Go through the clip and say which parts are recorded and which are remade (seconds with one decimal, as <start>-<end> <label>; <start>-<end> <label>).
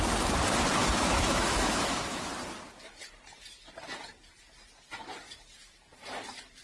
0.0-0.8 recorded; 0.8-2.3 remade; 2.3-6.6 recorded